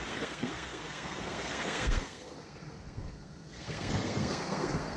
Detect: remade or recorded remade